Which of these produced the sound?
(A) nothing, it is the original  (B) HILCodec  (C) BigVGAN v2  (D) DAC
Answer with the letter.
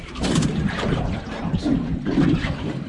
C